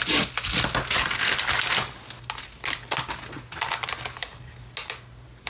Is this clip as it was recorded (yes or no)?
yes